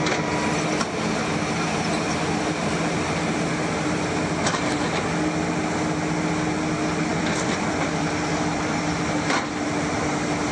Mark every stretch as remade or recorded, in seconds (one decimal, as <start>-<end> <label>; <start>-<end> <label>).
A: 0.0-7.1 recorded; 7.1-9.5 remade; 9.5-10.5 recorded